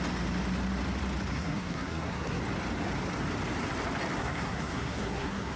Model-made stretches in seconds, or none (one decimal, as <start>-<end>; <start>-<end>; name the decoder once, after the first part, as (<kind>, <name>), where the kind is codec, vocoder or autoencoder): 1.3-2.4 (codec, SNAC); 4.2-5.6